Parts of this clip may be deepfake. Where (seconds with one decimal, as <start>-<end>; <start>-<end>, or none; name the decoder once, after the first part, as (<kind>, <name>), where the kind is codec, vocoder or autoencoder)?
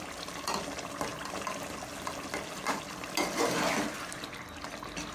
none